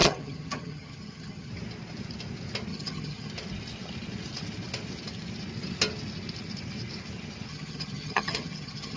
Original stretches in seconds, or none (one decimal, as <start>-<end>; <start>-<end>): 1.5-2.7; 3.3-7.5